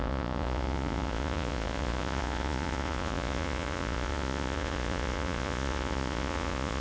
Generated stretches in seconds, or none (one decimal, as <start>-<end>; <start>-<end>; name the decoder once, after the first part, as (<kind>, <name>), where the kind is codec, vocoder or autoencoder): 0.0-6.8 (vocoder, Vocos)